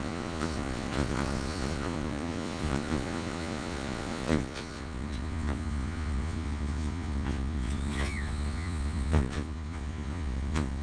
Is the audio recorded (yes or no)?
no